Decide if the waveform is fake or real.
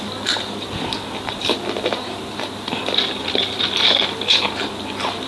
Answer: real